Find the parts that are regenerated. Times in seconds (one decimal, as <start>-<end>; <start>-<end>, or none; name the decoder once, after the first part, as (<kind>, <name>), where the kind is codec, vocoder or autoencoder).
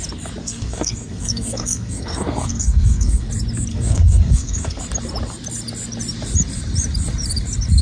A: 0.4-3.3 (codec, SNAC); 3.7-4.8